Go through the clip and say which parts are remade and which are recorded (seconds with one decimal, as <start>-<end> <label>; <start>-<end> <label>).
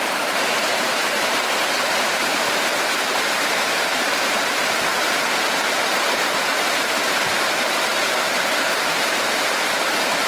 0.0-10.3 remade